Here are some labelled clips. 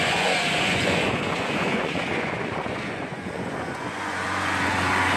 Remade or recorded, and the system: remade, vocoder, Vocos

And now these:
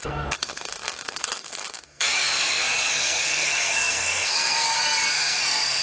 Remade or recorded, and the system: remade, codec, SNAC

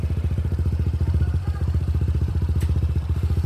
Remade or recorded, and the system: remade, vocoder, BigVGAN v2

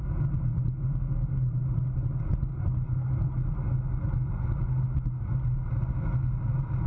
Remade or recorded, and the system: recorded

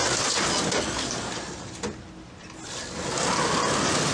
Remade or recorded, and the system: recorded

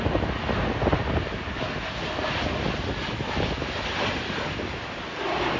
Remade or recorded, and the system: recorded